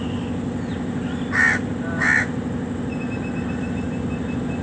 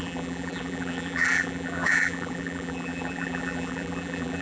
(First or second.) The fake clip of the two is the second